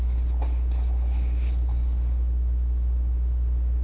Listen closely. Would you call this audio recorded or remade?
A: recorded